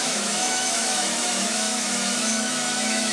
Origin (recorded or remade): remade